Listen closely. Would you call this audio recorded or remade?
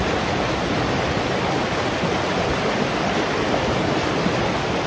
recorded